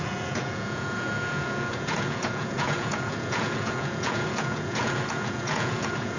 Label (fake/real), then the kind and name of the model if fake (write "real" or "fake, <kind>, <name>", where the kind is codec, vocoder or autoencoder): fake, vocoder, Vocos